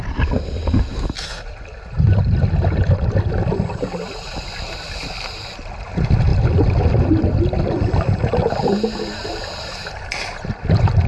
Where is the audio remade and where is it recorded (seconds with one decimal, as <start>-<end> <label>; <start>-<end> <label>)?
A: 0.0-11.1 recorded